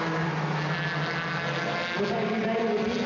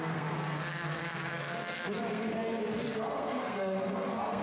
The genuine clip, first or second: first